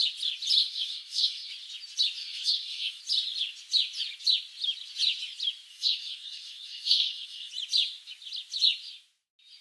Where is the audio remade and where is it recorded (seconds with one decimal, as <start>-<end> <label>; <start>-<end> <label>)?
0.0-0.6 recorded; 0.6-1.5 remade; 1.5-2.2 recorded; 2.2-3.0 remade; 3.0-5.7 recorded; 5.7-7.5 remade; 7.5-9.6 recorded